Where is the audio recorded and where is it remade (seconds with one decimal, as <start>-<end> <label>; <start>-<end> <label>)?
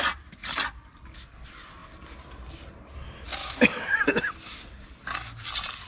0.0-3.4 recorded; 3.4-4.0 remade; 4.0-5.9 recorded